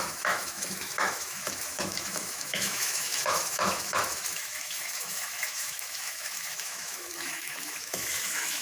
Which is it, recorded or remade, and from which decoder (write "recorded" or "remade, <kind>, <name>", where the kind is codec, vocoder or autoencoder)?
remade, autoencoder, DAC-VAE